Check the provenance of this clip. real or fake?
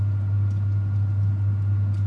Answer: real